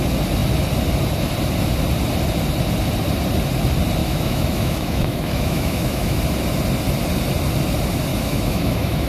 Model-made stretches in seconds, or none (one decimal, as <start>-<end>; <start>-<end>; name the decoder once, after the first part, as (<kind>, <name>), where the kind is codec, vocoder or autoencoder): 4.0-6.2 (autoencoder, DAC-VAE); 8.1-9.1